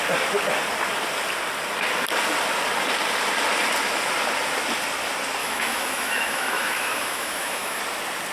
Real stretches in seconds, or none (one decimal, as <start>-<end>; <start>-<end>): 0.0-5.4; 7.8-8.3